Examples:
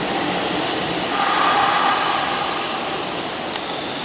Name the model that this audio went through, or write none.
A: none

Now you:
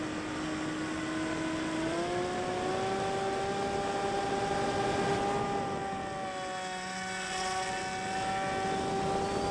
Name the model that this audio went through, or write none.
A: none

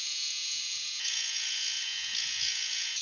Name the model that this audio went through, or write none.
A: vocoder, Vocos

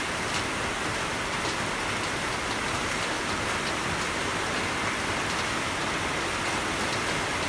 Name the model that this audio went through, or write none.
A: none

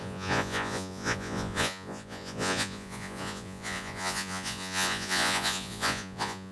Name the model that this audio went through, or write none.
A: vocoder, Vocos